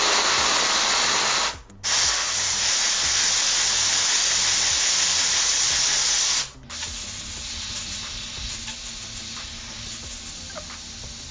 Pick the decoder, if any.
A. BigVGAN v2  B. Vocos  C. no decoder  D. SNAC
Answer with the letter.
C